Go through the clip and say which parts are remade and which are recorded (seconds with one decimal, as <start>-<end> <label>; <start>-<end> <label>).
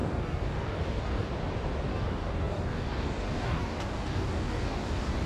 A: 0.0-1.3 remade; 1.3-1.9 recorded; 1.9-5.3 remade